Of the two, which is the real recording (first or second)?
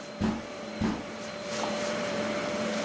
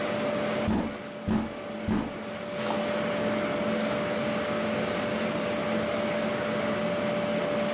second